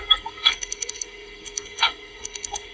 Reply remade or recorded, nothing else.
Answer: remade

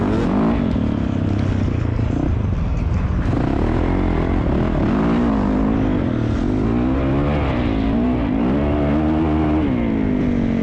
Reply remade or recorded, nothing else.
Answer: recorded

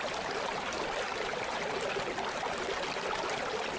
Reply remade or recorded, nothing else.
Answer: recorded